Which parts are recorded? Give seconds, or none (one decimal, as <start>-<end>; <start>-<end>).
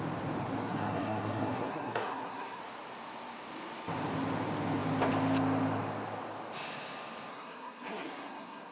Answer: 0.0-0.6; 2.6-7.3